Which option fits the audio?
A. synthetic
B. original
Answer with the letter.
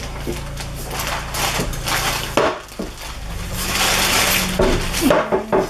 B